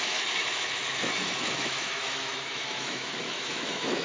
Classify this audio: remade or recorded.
remade